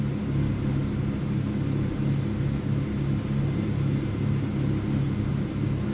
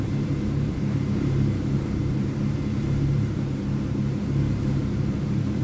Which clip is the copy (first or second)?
second